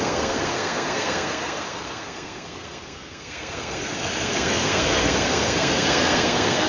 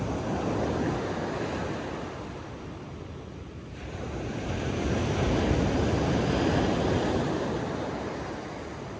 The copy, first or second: first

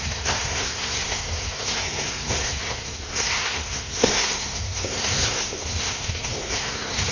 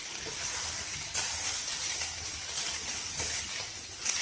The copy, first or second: first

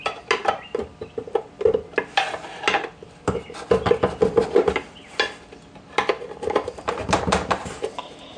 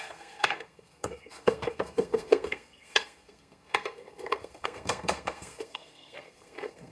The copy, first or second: second